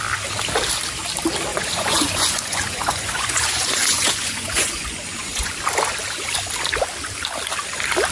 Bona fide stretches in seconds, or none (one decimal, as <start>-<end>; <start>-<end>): 0.0-1.5; 5.5-8.1